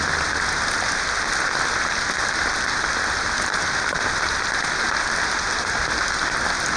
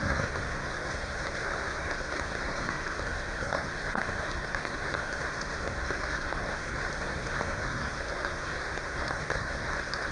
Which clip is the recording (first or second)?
first